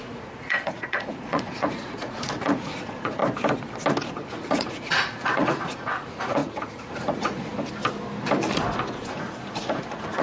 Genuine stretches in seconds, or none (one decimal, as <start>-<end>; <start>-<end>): 3.2-4.1; 7.5-9.0